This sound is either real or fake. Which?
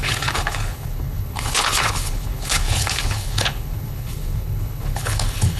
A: fake